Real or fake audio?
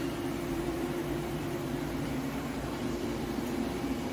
fake